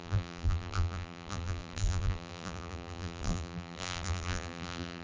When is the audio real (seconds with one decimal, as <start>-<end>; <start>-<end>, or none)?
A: none